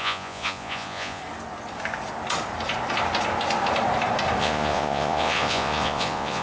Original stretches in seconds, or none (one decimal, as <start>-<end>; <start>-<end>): 1.2-4.4